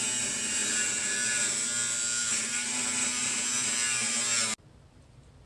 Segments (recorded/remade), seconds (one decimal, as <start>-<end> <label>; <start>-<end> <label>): 0.0-2.2 recorded; 2.2-4.1 remade; 4.1-5.5 recorded